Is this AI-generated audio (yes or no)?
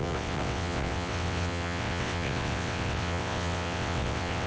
yes